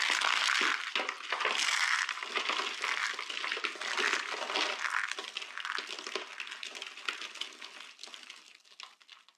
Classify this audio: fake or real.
real